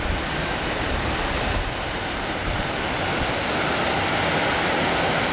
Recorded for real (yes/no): yes